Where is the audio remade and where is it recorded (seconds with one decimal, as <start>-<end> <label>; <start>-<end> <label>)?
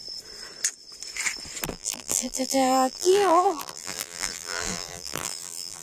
0.0-1.7 recorded; 1.7-5.8 remade